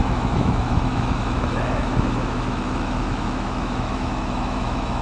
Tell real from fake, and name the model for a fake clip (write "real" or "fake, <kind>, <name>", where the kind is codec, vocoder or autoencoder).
fake, autoencoder, DAC-VAE